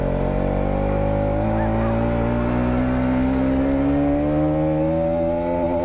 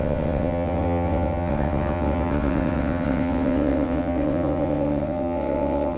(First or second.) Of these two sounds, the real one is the first